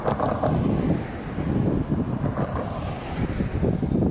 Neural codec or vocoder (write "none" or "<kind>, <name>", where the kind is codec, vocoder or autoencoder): none